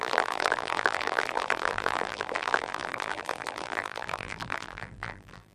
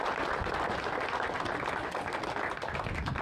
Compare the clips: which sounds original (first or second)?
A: second